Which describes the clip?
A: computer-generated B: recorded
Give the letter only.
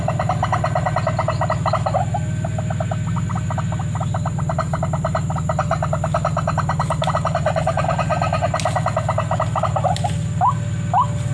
B